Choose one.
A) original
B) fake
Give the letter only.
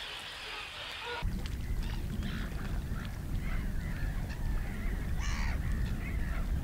A